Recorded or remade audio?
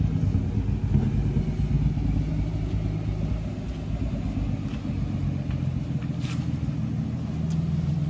recorded